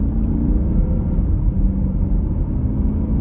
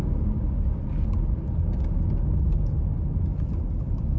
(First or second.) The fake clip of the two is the first